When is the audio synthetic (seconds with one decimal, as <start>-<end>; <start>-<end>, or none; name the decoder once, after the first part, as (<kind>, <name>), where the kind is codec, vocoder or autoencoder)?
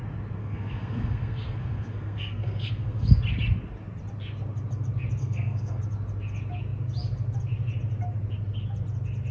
0.4-3.2 (codec, SNAC); 5.2-5.8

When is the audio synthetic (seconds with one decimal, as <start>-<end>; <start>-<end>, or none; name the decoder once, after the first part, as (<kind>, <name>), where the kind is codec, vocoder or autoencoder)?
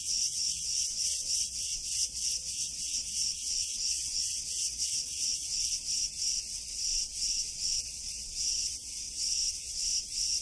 0.0-10.4 (vocoder, WaveNeXt)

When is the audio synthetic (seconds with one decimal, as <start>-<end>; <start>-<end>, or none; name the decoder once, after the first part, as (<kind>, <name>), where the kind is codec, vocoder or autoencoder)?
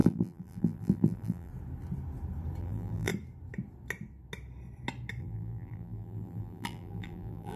0.0-1.5 (vocoder, BigVGAN v2); 2.6-3.1; 5.2-7.6